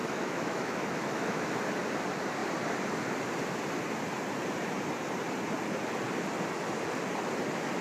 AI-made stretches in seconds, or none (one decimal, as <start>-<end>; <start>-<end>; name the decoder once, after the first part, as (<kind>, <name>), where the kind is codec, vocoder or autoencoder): 0.0-1.5 (autoencoder, DAC-VAE)